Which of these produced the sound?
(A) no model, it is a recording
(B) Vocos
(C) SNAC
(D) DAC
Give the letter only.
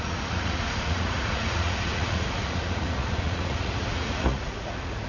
B